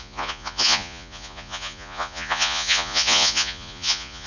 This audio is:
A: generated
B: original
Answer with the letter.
A